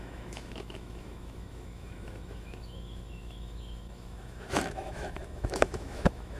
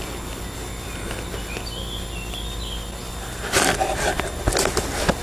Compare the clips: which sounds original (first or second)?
second